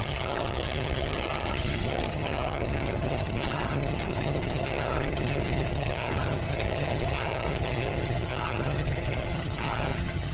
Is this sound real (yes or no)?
no